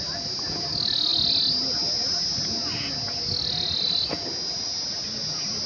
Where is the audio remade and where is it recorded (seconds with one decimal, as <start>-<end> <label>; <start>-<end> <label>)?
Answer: 0.0-5.7 recorded